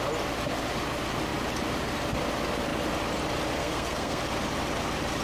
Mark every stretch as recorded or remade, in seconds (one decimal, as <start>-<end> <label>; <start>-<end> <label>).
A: 0.0-3.6 recorded; 3.6-4.2 remade; 4.2-5.2 recorded